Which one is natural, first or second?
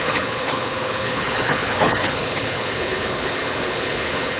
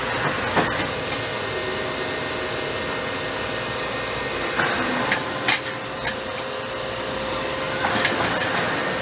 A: second